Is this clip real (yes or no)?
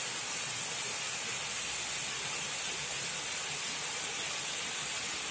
yes